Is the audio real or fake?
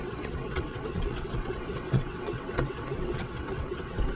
fake